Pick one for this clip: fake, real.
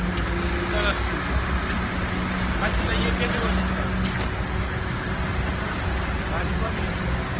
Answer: real